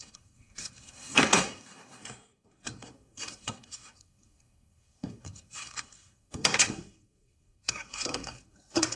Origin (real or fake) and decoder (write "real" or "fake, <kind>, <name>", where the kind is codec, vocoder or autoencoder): fake, codec, SNAC